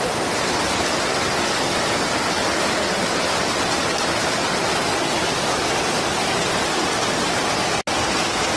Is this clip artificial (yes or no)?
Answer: no